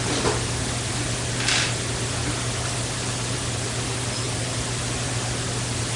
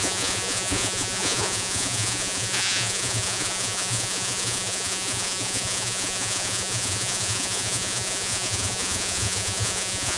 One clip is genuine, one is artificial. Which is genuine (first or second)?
first